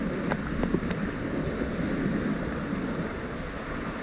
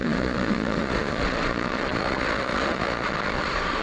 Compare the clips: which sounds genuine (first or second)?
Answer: first